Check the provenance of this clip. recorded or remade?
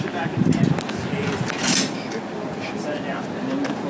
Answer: recorded